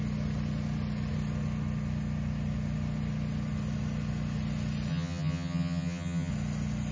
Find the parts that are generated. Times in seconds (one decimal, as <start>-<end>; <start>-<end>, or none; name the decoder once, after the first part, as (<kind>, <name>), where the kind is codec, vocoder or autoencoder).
4.9-6.3 (vocoder, HiFi-GAN)

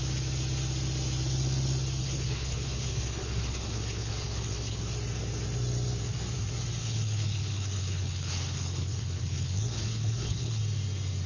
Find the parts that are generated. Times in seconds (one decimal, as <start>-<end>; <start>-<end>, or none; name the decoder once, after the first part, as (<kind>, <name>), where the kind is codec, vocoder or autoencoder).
2.0-4.8 (codec, HILCodec); 6.8-10.6